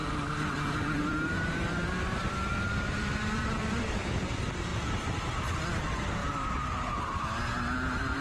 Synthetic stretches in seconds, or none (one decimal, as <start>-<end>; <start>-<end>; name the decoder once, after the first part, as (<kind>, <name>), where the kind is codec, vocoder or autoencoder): 0.0-3.9 (vocoder, BigVGAN v2); 6.2-7.0